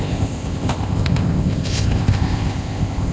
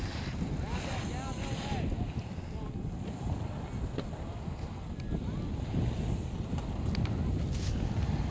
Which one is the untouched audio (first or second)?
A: second